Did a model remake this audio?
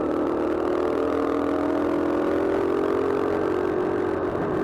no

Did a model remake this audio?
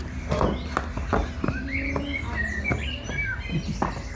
no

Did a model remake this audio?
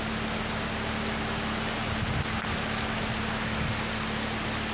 no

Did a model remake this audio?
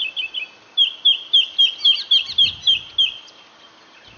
no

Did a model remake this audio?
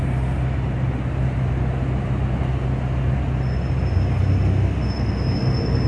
no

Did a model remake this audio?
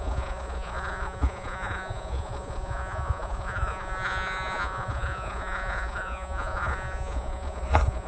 yes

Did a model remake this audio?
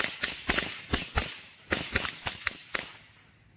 no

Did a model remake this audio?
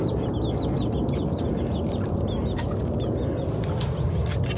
no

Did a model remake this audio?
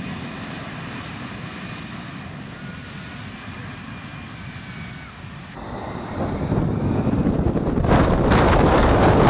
no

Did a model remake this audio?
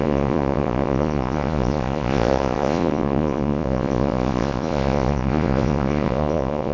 yes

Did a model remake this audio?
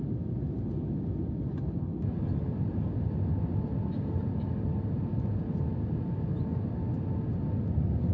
no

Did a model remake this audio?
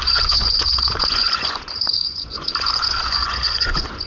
yes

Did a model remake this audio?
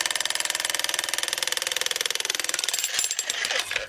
yes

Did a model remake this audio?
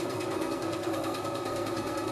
yes